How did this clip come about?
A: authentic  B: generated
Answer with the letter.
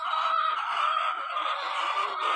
A